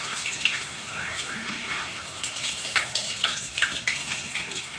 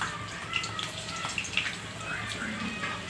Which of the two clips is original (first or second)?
second